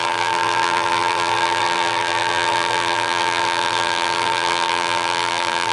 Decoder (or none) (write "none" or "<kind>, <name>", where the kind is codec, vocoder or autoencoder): vocoder, BigVGAN v2